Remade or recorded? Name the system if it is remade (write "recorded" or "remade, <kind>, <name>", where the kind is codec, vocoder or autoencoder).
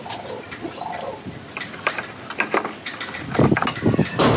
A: recorded